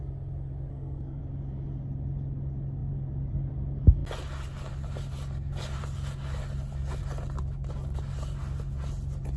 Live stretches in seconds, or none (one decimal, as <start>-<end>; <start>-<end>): 0.0-0.7; 1.2-9.4